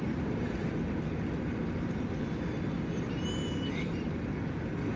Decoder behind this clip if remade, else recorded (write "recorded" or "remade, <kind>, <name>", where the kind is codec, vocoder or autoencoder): recorded